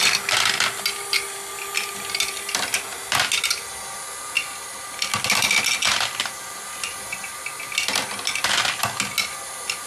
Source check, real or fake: real